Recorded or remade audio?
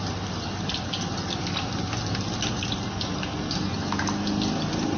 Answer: recorded